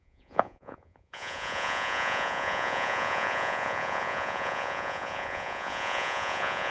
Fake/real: fake